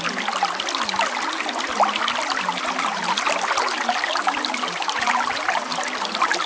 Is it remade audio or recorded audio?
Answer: recorded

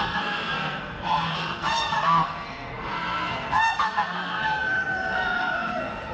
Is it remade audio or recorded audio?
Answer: remade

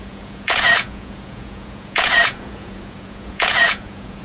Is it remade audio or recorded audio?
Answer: remade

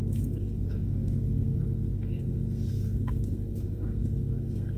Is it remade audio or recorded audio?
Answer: remade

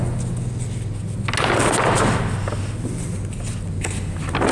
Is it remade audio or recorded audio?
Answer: recorded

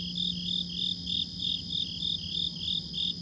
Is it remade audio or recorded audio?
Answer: recorded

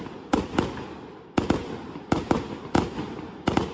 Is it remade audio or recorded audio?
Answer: recorded